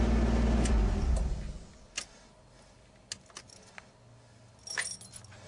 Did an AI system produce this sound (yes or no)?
no